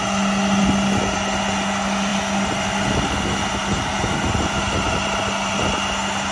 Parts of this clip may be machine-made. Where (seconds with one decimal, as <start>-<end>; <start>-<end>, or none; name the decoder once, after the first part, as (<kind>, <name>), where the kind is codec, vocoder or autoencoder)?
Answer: none